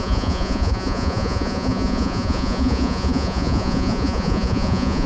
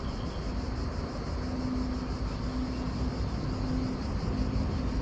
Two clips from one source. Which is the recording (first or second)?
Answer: second